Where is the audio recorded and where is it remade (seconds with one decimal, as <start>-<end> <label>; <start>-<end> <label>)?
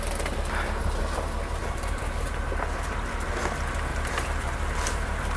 0.0-1.6 recorded; 1.6-3.3 remade; 3.3-3.9 recorded; 3.9-5.4 remade